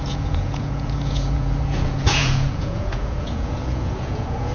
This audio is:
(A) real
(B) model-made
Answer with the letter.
B